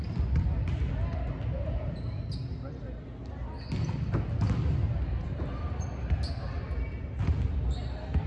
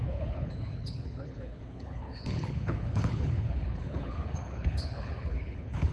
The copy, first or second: second